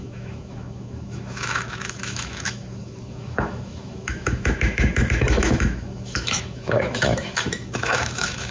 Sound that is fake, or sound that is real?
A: fake